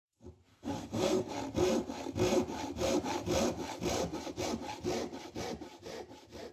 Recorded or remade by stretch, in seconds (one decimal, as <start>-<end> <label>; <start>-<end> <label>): 0.0-0.5 recorded; 0.5-1.3 remade; 1.3-6.5 recorded